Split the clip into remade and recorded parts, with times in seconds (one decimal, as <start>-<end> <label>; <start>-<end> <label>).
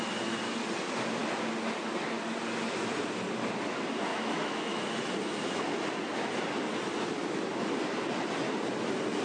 0.0-4.1 recorded; 4.1-4.8 remade; 4.8-9.2 recorded